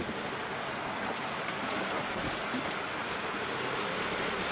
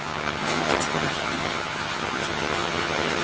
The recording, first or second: first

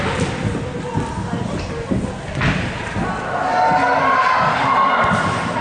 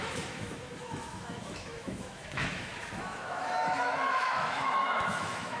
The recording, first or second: first